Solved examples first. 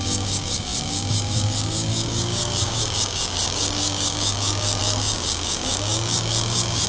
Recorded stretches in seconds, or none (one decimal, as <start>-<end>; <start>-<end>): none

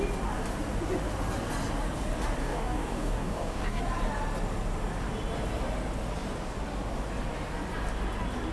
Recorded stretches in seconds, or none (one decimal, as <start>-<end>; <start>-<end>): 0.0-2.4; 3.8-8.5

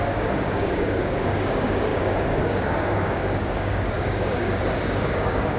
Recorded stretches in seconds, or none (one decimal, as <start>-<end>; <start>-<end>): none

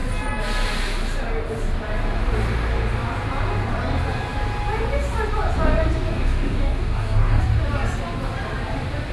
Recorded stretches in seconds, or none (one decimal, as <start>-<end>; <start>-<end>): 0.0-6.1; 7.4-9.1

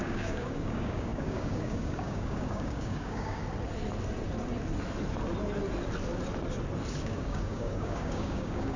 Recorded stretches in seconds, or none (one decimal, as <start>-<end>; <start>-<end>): 3.4-7.0